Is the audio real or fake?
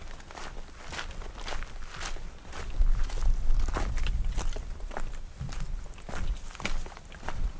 real